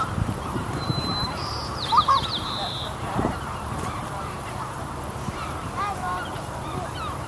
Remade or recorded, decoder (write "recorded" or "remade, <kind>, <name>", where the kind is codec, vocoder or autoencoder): remade, vocoder, BigVGAN v2